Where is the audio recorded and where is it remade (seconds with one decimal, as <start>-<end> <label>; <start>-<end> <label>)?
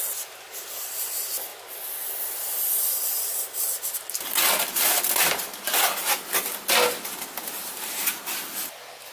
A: 0.0-9.1 recorded